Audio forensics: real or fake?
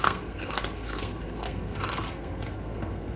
fake